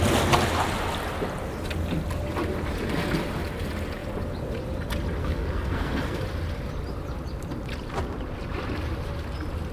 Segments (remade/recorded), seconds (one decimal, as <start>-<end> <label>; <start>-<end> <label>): 0.0-5.2 recorded; 5.2-6.2 remade; 6.2-9.7 recorded